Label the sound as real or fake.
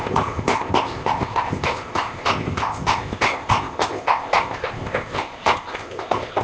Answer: fake